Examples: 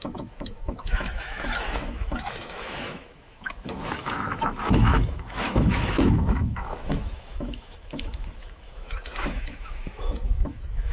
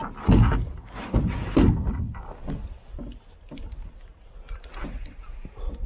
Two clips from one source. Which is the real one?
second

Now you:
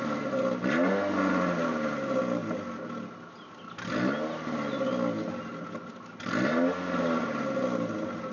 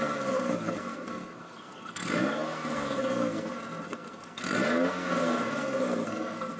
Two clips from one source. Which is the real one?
first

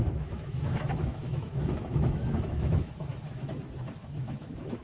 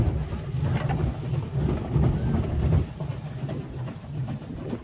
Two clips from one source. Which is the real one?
second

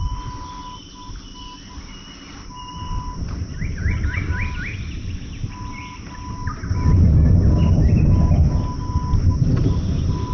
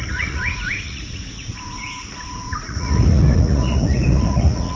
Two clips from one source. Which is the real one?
first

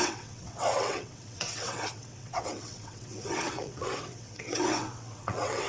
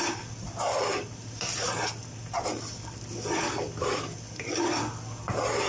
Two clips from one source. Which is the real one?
second